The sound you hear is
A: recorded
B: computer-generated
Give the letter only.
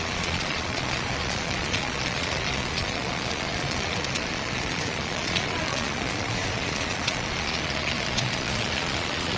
B